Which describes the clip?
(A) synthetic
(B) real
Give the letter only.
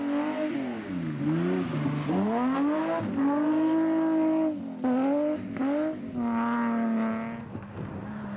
B